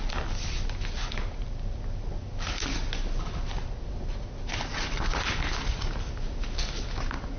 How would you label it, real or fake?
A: real